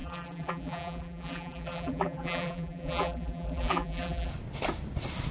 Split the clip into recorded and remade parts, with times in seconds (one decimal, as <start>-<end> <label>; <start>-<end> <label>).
0.0-4.3 remade; 4.3-5.3 recorded